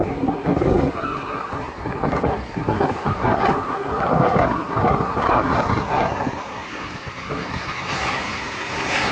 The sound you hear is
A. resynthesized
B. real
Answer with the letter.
A